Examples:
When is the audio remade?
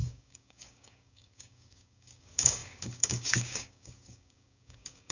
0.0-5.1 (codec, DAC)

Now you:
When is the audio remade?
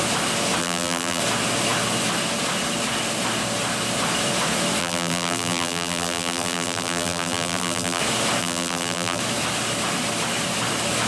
0.6-1.2 (vocoder, BigVGAN v2); 4.8-8.0; 8.4-9.2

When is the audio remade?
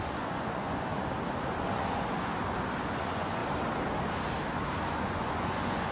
0.0-0.9 (vocoder, Vocos); 1.6-2.3; 2.9-3.4; 4.9-5.9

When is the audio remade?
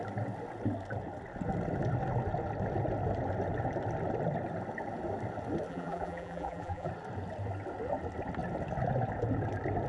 5.7-6.9 (vocoder, BigVGAN v2)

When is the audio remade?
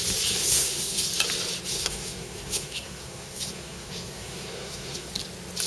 0.4-1.1 (codec, SNAC); 1.7-5.1